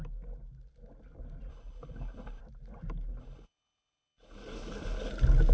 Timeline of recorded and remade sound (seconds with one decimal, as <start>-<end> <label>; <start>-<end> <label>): 0.0-1.5 recorded; 1.5-2.4 remade; 2.4-3.2 recorded; 3.2-5.1 remade; 5.1-5.5 recorded